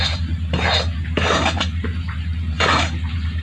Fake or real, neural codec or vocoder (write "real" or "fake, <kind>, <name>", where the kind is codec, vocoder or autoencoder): fake, vocoder, BigVGAN v2